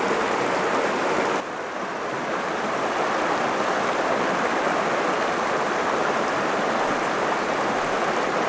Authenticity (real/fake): real